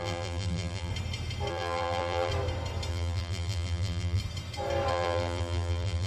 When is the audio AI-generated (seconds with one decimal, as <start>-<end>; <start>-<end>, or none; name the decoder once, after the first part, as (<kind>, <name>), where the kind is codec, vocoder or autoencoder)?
0.0-0.9 (vocoder, BigVGAN v2); 1.5-2.3; 2.9-4.2; 4.9-6.1